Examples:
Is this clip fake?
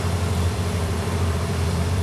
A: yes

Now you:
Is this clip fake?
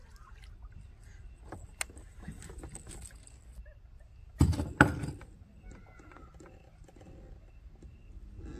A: no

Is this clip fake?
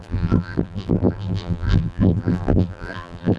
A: yes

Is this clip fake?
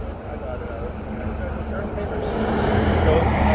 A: no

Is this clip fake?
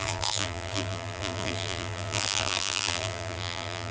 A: yes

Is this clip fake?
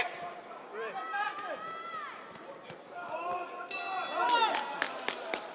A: no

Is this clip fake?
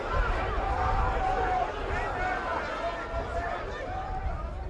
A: no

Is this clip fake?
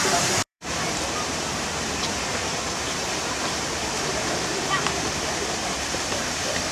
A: yes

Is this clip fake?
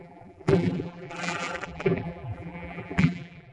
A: yes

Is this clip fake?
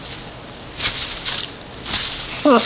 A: no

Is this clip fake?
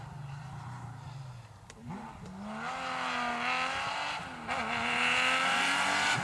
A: no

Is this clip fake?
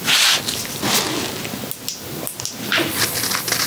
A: no